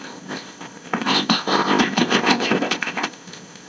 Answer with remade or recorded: remade